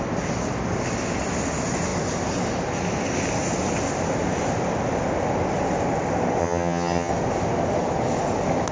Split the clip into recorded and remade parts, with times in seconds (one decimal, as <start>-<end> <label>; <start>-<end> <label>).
0.0-6.4 recorded; 6.4-7.1 remade; 7.1-8.7 recorded